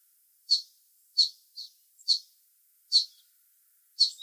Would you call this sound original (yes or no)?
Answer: yes